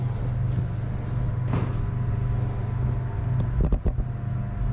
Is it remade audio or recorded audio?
recorded